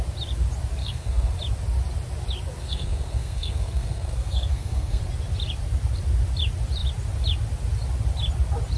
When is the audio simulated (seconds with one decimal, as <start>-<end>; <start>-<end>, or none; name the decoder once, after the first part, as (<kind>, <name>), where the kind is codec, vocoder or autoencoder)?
0.8-1.3 (codec, SNAC); 2.6-5.0